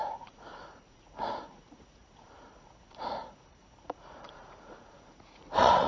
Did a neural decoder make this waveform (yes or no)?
yes